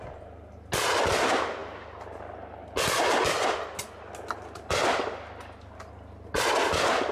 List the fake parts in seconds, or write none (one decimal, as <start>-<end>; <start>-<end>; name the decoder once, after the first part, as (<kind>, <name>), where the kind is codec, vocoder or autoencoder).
none